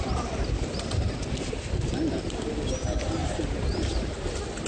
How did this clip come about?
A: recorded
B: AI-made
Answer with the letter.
A